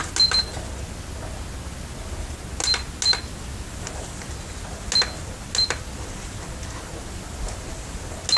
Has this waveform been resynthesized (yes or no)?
no